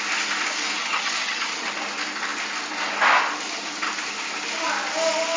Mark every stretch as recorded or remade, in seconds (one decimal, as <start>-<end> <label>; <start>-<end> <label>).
0.0-0.8 recorded; 0.8-1.7 remade; 1.7-5.4 recorded